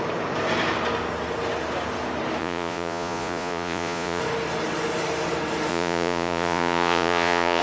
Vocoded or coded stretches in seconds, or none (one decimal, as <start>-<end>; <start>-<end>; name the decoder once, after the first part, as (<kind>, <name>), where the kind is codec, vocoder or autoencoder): 2.4-4.2 (vocoder, Vocos); 5.7-7.6